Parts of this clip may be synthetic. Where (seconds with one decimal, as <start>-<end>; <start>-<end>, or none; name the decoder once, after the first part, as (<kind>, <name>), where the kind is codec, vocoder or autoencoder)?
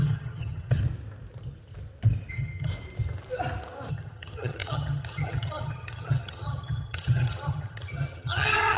0.0-0.8 (vocoder, HiFi-GAN); 2.3-2.7; 3.9-8.8